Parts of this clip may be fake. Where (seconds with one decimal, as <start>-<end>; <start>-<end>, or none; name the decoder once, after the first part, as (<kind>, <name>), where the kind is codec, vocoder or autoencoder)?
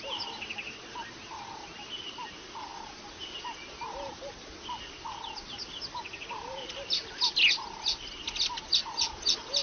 none